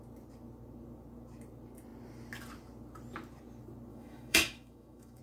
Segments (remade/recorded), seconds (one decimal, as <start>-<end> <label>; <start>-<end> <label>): 0.0-3.9 recorded; 3.9-5.2 remade